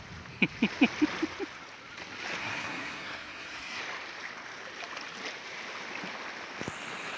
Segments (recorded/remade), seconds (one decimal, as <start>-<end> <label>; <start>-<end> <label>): 0.0-2.4 recorded; 2.4-3.8 remade; 3.8-7.2 recorded